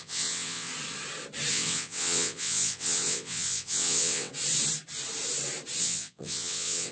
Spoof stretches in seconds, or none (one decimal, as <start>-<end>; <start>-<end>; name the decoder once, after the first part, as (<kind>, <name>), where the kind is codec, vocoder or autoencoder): 0.0-0.7 (vocoder, WaveNeXt); 1.5-4.3; 5.8-6.9